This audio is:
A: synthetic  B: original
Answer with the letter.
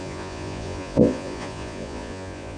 A